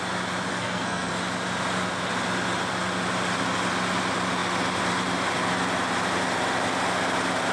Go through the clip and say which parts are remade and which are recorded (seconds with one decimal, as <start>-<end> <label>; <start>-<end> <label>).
0.0-0.5 recorded; 0.5-1.1 remade; 1.1-7.5 recorded